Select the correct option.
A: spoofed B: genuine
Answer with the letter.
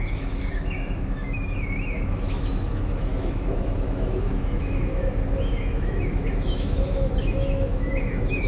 A